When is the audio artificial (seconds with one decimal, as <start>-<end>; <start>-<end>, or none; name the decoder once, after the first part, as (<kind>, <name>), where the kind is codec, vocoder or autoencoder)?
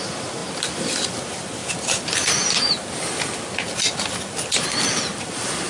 0.0-0.4 (vocoder, BigVGAN v2); 1.1-1.6; 4.5-5.7